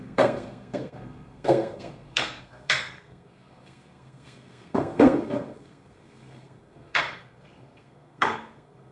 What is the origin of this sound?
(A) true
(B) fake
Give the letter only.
B